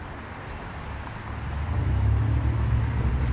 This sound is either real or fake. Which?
real